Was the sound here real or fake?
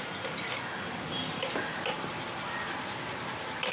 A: real